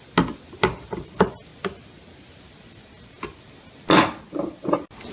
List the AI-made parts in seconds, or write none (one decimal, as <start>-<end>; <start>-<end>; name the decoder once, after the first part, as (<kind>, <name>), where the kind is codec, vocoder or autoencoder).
none